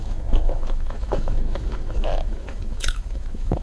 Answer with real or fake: fake